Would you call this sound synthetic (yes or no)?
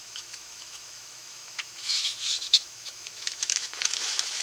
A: yes